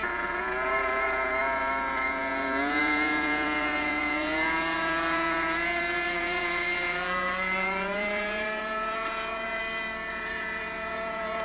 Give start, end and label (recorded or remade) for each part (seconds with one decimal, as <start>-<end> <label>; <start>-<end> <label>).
0.0-9.6 remade; 9.6-10.1 recorded; 10.1-11.4 remade

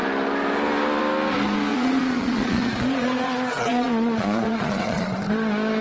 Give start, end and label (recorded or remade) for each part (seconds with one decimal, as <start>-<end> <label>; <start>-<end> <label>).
0.0-1.7 recorded; 1.7-5.2 remade; 5.2-5.8 recorded

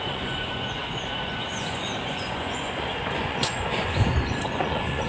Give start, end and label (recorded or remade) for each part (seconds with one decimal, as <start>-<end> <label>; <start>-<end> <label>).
0.0-5.1 remade

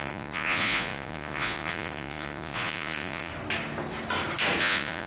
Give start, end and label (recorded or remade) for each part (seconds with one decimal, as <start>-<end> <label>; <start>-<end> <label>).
0.0-3.3 remade; 3.3-4.6 recorded; 4.6-5.1 remade

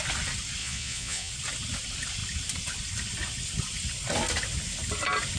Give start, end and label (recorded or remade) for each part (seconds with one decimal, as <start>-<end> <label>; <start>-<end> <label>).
0.0-0.6 recorded; 0.6-1.3 remade; 1.3-5.4 recorded

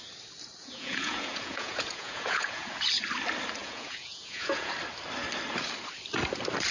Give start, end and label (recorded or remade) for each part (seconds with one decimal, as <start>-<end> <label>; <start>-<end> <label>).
0.0-0.6 recorded; 0.6-2.7 remade; 2.7-3.6 recorded; 3.6-4.7 remade; 4.7-6.7 recorded

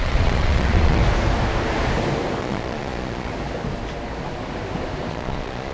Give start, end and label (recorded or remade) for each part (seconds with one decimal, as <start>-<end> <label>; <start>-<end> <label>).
0.0-1.0 remade; 1.0-2.4 recorded; 2.4-3.3 remade; 3.3-5.1 recorded; 5.1-5.7 remade

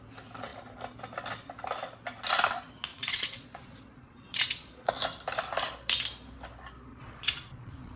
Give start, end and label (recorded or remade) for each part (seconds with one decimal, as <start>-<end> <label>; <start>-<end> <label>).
0.0-2.9 recorded; 2.9-4.9 remade; 4.9-6.9 recorded; 6.9-8.0 remade